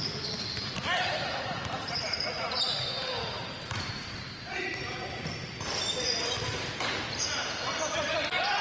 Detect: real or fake fake